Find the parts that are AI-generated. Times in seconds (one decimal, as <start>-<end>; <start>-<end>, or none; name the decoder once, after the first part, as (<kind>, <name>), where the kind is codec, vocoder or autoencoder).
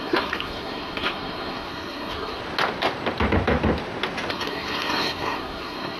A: 0.0-2.4 (codec, SNAC); 4.3-6.0